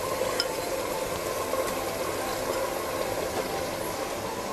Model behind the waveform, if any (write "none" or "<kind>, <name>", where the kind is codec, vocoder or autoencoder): none